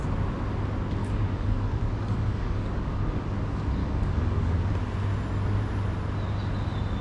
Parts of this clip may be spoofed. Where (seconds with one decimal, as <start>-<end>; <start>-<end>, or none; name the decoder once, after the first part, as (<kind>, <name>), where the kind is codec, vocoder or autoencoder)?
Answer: 1.0-3.2 (codec, DAC); 3.8-4.7